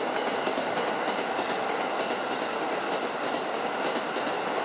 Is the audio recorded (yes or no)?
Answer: yes